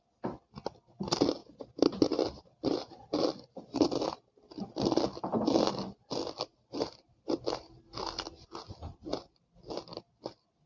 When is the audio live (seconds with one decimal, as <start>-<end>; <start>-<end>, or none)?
0.0-1.4; 3.0-6.5; 7.8-10.7